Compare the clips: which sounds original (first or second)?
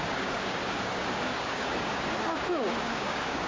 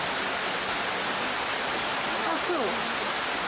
second